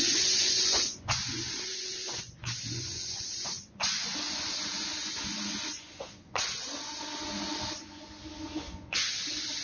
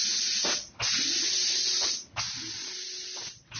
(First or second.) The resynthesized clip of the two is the first